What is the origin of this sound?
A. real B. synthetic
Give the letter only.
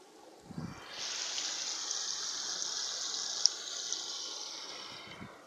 A